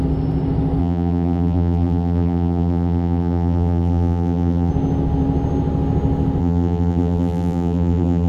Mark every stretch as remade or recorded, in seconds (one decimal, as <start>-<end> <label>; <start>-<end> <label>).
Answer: 0.0-0.8 recorded; 0.8-4.7 remade; 4.7-6.4 recorded; 6.4-8.3 remade